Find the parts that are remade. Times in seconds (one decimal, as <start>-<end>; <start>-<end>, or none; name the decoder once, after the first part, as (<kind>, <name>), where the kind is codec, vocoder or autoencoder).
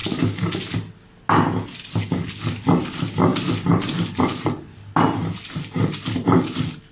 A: none